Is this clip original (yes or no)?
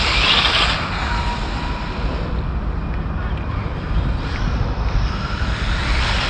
yes